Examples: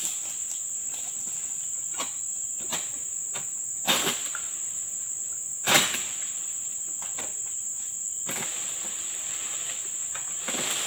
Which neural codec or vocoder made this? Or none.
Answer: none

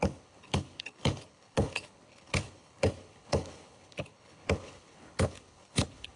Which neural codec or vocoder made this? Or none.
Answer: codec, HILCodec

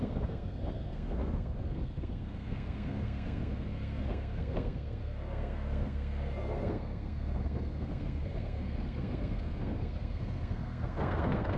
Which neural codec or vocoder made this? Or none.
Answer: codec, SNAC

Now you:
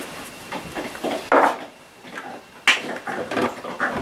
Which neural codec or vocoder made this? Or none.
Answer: none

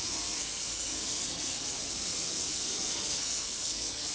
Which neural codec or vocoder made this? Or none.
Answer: codec, SNAC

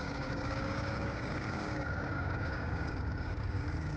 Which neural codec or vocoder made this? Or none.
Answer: codec, DAC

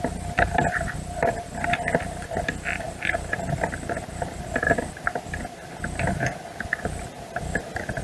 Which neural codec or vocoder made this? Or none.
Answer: none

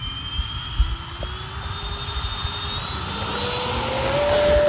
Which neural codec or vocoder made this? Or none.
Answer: none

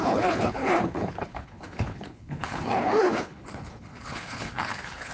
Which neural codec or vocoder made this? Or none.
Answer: codec, HILCodec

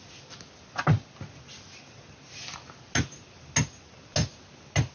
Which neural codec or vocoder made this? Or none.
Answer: none